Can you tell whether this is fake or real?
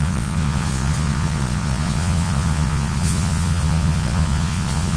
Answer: fake